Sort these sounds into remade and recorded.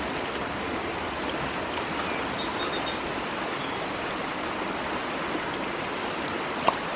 recorded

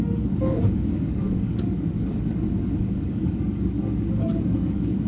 remade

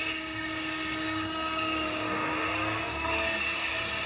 remade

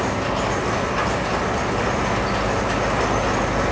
recorded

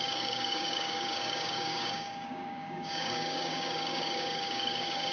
remade